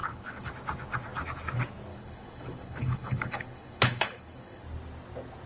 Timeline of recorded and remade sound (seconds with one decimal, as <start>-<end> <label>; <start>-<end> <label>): 0.0-0.5 remade; 0.5-1.9 recorded; 1.9-4.6 remade; 4.6-5.5 recorded